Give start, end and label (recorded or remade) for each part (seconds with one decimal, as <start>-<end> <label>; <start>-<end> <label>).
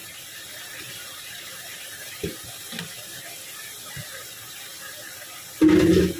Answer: 0.0-1.5 remade; 1.5-6.2 recorded